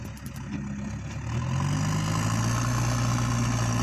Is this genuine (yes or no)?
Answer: yes